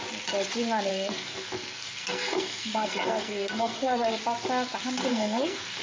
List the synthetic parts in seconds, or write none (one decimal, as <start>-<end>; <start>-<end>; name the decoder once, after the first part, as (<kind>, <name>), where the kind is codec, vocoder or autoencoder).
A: 0.9-4.1 (codec, SNAC); 5.1-5.8